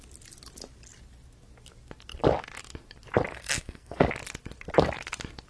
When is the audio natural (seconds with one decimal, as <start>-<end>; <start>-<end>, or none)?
0.0-3.3; 4.1-5.5